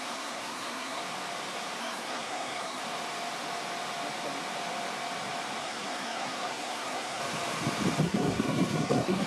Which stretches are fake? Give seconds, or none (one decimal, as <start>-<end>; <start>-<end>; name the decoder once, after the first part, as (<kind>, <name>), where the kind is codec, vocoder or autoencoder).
0.0-1.0 (codec, SNAC); 1.8-2.8; 5.6-7.2; 8.0-9.3